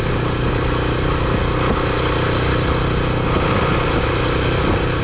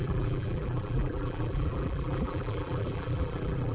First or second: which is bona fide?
first